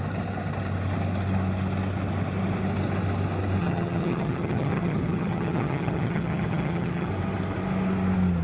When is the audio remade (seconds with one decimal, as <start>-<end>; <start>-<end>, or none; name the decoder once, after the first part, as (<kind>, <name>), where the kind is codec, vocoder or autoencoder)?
3.6-7.1 (vocoder, HiFi-GAN)